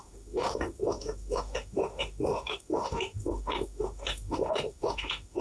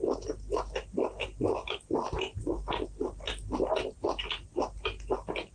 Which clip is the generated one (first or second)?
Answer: first